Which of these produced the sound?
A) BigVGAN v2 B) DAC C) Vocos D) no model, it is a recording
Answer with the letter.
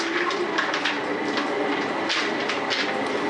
D